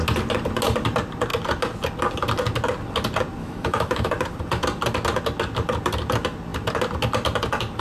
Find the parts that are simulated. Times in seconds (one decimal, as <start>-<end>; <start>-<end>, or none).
3.4-4.1